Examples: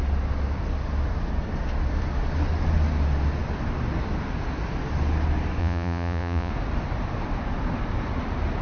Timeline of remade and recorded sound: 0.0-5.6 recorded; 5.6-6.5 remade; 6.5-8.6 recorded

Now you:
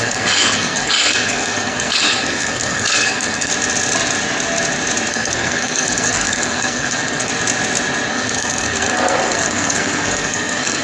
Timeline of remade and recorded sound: 0.0-3.5 remade; 3.5-5.1 recorded; 5.1-7.3 remade; 7.3-8.1 recorded; 8.1-10.8 remade

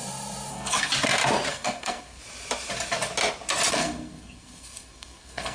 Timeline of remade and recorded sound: 0.0-0.5 recorded; 0.5-0.9 remade; 0.9-1.5 recorded; 1.5-2.2 remade; 2.2-3.7 recorded; 3.7-5.5 remade